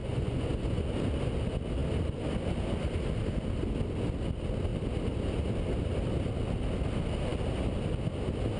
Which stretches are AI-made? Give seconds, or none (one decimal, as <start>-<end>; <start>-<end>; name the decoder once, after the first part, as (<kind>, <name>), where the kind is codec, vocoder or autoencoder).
0.0-0.8 (vocoder, Vocos)